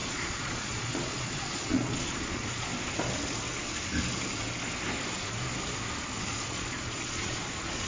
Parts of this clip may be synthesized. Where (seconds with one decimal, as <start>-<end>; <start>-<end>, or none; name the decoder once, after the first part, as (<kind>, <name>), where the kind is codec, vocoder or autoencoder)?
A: 0.0-2.7 (vocoder, Vocos); 6.2-7.9